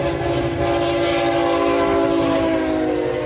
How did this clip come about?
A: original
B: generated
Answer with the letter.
A